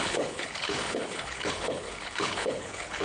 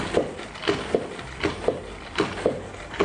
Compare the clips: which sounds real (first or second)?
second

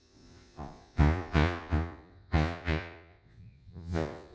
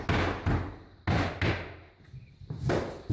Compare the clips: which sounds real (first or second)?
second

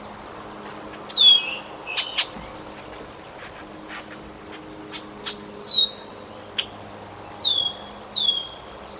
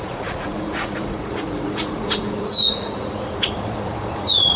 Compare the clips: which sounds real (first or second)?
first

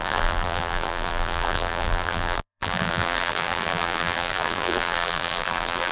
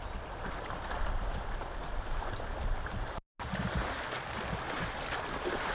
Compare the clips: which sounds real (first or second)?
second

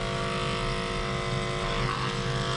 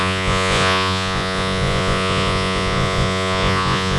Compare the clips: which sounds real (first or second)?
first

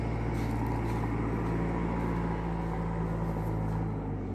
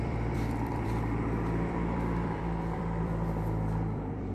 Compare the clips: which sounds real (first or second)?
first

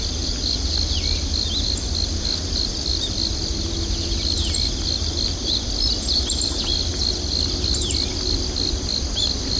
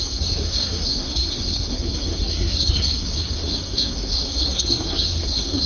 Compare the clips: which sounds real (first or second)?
first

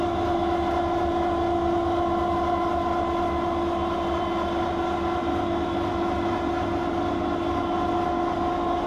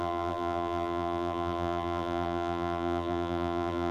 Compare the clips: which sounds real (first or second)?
first